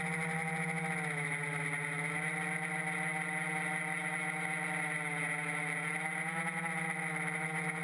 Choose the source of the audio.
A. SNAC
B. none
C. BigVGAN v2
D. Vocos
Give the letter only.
B